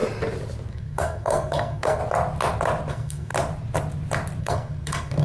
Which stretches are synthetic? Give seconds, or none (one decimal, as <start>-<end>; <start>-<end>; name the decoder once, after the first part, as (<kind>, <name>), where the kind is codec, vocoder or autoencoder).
0.7-2.0 (codec, SNAC); 2.9-3.3; 4.4-5.2